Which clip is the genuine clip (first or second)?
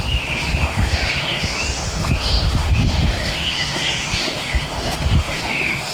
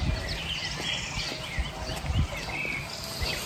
second